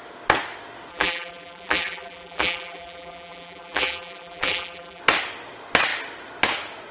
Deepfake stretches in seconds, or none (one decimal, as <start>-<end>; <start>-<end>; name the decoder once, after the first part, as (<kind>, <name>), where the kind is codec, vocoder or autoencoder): 0.9-5.0 (vocoder, BigVGAN v2)